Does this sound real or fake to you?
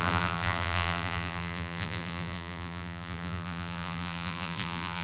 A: fake